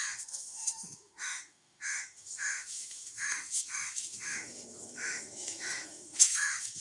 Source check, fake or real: fake